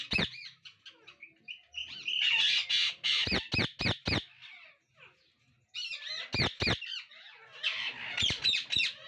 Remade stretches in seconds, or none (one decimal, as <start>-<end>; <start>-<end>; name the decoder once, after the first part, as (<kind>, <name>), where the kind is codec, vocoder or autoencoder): none